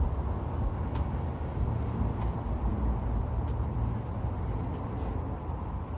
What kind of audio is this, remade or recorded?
recorded